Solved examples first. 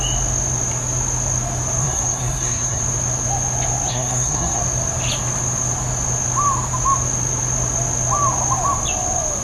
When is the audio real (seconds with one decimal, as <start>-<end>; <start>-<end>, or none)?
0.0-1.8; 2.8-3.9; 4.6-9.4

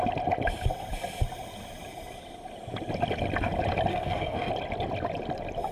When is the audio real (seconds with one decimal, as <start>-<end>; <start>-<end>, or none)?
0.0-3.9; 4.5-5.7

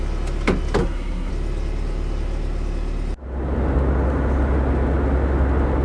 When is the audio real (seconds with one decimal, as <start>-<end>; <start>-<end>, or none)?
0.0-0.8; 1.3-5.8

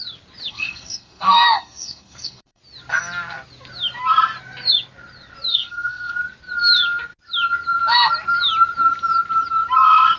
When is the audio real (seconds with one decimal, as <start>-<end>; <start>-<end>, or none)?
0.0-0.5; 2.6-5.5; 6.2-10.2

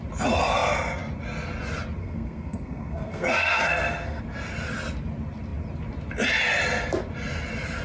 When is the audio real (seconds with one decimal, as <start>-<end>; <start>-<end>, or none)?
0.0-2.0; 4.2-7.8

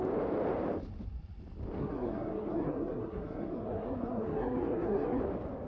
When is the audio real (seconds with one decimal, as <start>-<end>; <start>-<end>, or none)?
0.0-1.8; 5.2-5.7